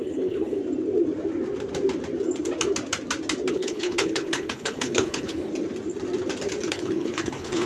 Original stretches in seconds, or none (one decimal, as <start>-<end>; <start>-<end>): 0.6-3.5; 5.5-6.7